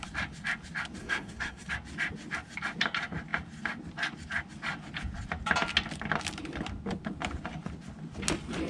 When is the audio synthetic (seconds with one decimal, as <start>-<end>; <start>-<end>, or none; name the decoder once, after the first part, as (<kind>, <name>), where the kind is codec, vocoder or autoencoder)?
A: 1.0-1.7 (codec, SNAC)